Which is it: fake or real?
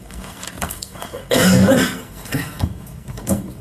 fake